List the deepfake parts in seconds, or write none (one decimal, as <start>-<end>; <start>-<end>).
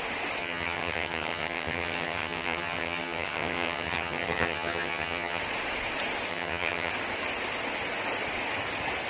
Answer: 0.4-5.4; 6.3-6.9